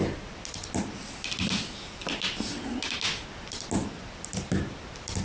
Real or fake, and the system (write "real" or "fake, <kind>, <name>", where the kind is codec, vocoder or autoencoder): real